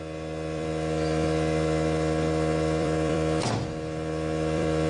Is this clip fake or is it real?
fake